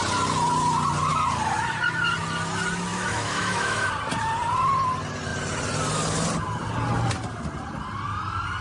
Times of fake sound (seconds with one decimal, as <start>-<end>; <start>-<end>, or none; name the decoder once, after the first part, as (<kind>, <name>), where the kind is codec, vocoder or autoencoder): 2.9-3.9 (autoencoder, DAC-VAE)